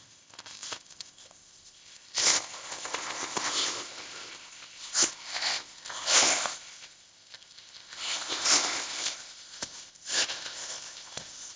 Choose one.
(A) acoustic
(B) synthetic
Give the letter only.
B